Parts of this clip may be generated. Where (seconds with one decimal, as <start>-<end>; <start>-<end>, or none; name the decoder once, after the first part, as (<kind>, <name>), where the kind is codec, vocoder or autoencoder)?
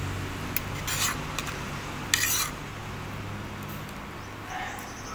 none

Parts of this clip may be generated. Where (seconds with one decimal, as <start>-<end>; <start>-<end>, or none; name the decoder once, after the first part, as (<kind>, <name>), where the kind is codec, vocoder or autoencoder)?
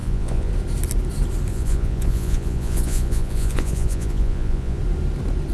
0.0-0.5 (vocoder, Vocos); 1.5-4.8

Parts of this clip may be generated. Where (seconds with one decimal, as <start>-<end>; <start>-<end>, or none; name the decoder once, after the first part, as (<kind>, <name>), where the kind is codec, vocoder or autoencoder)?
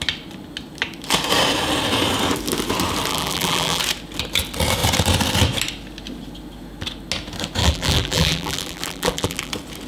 3.1-3.8 (vocoder, BigVGAN v2); 7.6-9.5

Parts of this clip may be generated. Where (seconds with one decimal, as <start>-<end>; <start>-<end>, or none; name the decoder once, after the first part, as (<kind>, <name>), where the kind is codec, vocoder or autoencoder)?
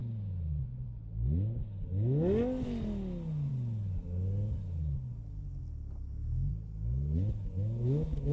0.0-0.9 (vocoder, Vocos)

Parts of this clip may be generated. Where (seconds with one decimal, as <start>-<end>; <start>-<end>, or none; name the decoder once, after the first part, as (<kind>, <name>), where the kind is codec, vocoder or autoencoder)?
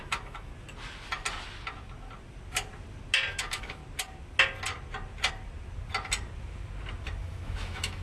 0.0-0.5 (autoencoder, DAC-VAE); 3.3-3.8; 7.2-8.0